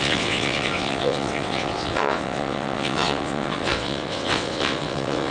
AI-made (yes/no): yes